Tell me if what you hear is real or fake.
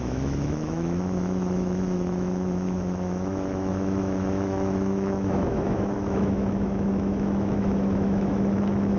fake